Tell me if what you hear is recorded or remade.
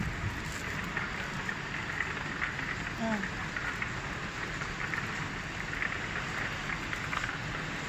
recorded